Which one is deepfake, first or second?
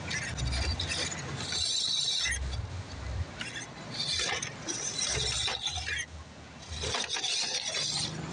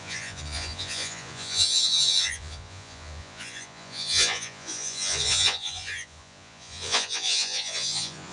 second